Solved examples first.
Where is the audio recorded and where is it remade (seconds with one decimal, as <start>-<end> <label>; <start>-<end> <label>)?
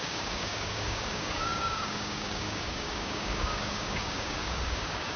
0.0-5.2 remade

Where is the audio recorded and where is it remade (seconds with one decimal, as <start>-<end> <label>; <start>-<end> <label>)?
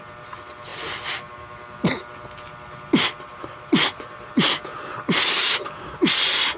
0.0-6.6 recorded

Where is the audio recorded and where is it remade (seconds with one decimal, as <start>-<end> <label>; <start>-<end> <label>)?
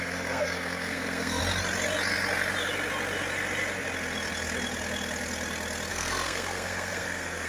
0.0-1.4 remade; 1.4-5.9 recorded; 5.9-7.5 remade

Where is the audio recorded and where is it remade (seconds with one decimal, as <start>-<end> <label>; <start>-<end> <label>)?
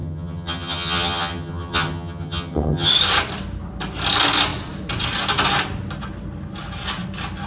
0.0-2.9 remade; 2.9-7.5 recorded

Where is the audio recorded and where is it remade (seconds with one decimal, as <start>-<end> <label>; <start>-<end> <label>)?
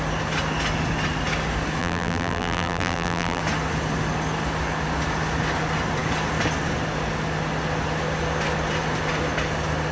0.0-1.8 recorded; 1.8-3.4 remade; 3.4-9.9 recorded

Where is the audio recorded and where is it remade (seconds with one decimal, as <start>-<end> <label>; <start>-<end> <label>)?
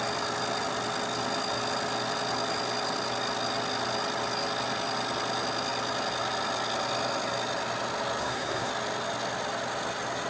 0.0-8.2 recorded; 8.2-8.7 remade; 8.7-10.3 recorded